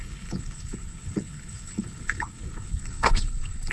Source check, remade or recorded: remade